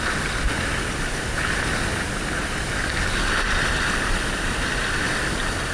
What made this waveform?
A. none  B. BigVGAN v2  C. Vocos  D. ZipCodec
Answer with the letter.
A